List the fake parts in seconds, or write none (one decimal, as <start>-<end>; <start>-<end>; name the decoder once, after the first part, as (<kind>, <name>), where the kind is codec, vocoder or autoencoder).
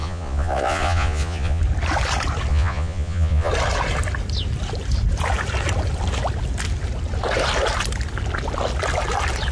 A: 0.0-1.6 (vocoder, Vocos); 2.5-3.5